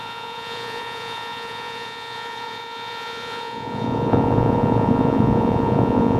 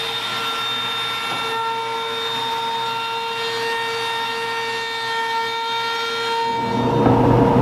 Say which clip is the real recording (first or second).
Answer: second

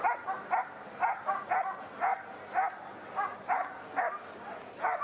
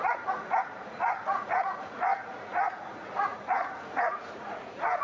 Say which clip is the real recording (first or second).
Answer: first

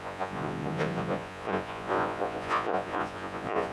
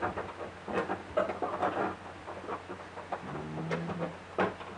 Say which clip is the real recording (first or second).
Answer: second